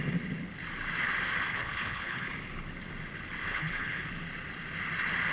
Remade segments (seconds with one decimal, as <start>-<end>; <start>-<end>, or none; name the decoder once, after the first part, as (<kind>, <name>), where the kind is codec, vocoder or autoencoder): 1.5-2.3 (codec, HILCodec); 3.5-4.0